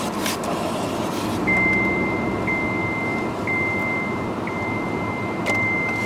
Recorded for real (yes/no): yes